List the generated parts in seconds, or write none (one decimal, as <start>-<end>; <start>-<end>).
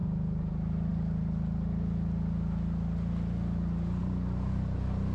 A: 0.0-0.5